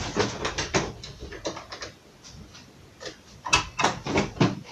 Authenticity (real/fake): real